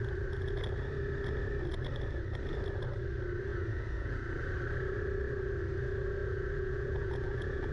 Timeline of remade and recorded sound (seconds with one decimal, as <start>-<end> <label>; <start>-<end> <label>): 0.0-3.5 recorded; 3.5-4.4 remade; 4.4-6.2 recorded; 6.2-7.7 remade